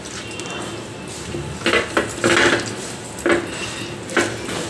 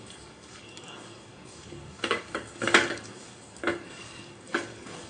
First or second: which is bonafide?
first